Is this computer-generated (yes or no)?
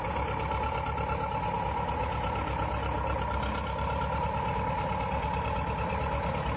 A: no